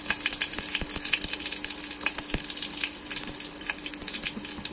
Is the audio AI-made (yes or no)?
no